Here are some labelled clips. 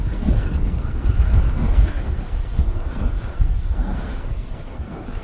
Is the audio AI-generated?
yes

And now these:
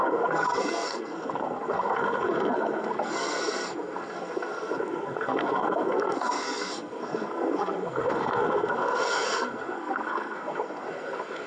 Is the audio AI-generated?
yes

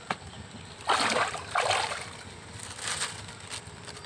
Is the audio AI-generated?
no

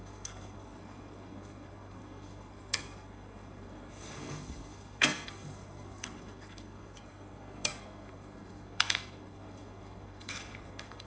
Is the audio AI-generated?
yes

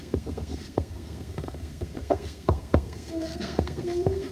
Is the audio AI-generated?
yes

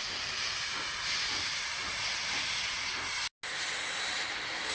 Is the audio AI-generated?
no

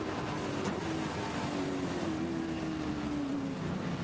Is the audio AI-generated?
no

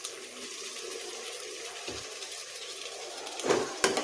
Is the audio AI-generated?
no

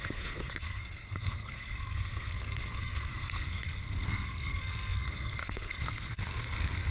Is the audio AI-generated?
yes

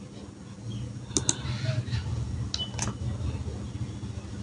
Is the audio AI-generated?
no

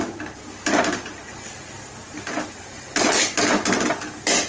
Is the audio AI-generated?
no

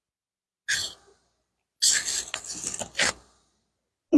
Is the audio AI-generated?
no